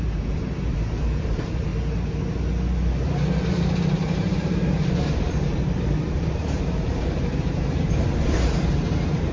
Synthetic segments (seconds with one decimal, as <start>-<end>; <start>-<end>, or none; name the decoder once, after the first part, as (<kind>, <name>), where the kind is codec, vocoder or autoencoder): 0.0-1.7 (vocoder, BigVGAN v2); 3.5-9.3